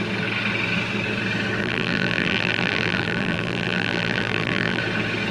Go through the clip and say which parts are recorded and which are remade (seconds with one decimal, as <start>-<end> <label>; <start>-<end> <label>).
0.0-1.6 recorded; 1.6-4.8 remade; 4.8-5.3 recorded